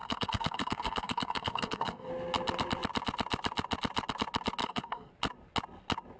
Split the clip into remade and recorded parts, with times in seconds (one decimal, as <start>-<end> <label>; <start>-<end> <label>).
0.0-2.1 remade; 2.1-4.6 recorded; 4.6-5.1 remade; 5.1-6.2 recorded